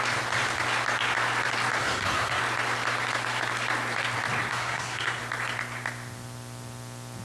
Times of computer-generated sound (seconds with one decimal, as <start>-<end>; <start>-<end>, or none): 1.8-2.4; 4.5-5.2